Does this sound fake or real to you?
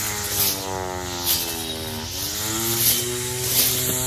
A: real